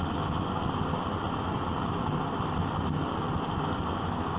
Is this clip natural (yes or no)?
yes